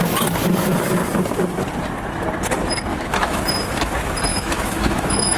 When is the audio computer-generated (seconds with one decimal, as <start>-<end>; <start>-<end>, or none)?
2.9-3.4; 4.3-5.4